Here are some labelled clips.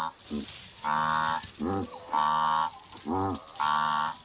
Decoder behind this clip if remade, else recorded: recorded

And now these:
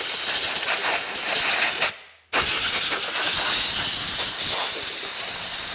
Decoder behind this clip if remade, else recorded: recorded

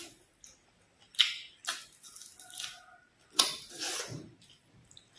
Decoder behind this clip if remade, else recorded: recorded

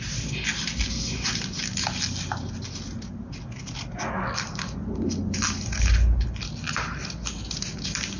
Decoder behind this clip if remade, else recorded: recorded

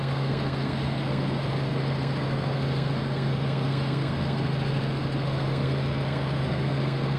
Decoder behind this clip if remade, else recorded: remade, codec, SNAC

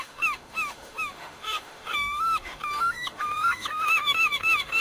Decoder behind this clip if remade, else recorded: remade, autoencoder, DAC-VAE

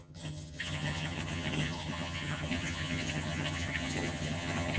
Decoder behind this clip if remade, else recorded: remade, vocoder, HiFi-GAN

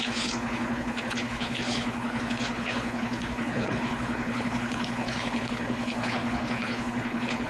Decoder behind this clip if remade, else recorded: remade, codec, HILCodec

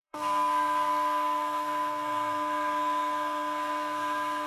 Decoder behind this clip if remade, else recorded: remade, codec, SNAC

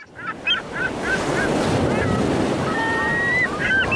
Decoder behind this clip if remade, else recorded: recorded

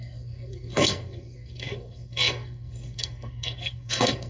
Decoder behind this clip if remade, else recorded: remade, codec, SNAC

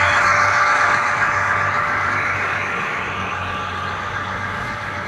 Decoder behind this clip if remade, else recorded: remade, codec, DAC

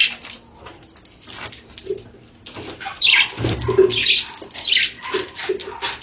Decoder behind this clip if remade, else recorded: recorded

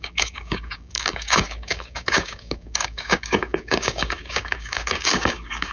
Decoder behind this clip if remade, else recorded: remade, codec, DAC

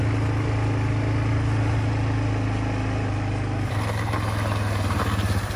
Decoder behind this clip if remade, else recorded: recorded